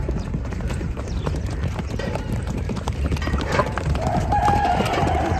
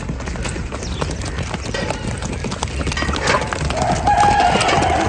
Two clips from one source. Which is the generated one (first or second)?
first